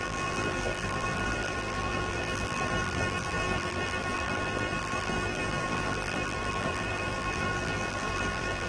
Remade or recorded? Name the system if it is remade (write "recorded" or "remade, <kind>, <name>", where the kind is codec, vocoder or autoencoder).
remade, vocoder, BigVGAN v2